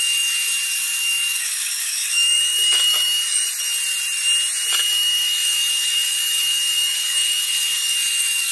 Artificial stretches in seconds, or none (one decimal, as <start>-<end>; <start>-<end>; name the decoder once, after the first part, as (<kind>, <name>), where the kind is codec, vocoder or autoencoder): 0.0-3.4 (codec, DAC); 4.7-8.5